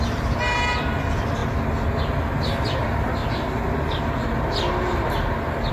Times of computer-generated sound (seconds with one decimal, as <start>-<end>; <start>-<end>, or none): 0.0-1.4; 2.6-3.2